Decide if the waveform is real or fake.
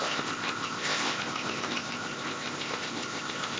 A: fake